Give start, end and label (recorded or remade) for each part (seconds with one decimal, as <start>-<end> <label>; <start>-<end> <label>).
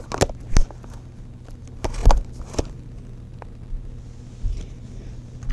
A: 0.0-5.5 recorded